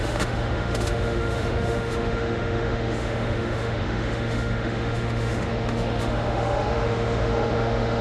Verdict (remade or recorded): remade